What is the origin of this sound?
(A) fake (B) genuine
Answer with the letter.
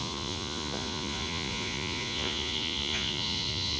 A